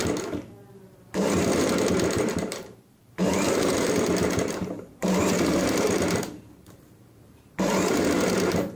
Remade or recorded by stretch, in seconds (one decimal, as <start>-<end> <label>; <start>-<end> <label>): 0.0-0.7 recorded; 0.7-8.8 remade